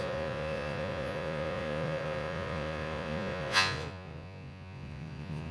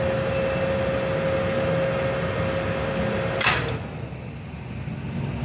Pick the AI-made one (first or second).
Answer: first